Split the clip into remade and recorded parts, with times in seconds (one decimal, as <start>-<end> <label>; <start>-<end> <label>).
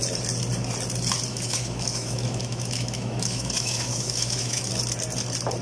0.0-1.3 recorded; 1.3-4.7 remade; 4.7-5.6 recorded